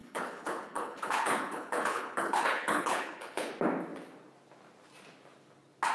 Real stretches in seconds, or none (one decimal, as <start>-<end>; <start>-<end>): 3.5-5.9